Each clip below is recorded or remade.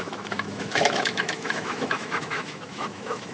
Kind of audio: remade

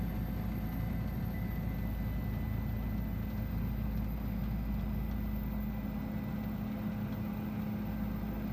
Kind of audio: recorded